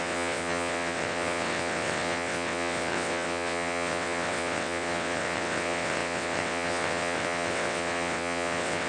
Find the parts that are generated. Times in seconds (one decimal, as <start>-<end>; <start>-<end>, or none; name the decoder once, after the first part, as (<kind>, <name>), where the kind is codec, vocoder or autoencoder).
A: 0.0-8.9 (vocoder, WaveNeXt)